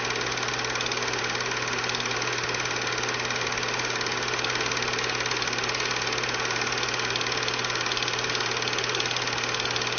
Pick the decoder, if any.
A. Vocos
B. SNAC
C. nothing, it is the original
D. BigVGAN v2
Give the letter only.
C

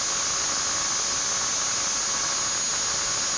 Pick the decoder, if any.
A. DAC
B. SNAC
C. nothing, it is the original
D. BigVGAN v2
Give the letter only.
C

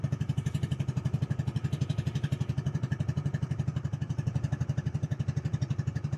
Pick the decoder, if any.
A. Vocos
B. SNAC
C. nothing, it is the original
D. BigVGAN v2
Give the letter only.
D